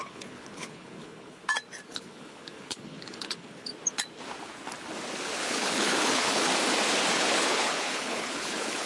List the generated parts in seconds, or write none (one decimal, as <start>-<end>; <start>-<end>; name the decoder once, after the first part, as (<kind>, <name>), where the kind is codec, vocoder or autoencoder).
0.0-1.4 (codec, HILCodec); 1.9-3.7; 5.4-6.5; 7.1-8.9